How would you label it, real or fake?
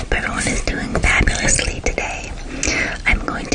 real